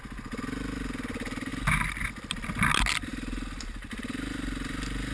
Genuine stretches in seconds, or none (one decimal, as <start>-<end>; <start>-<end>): 0.0-5.1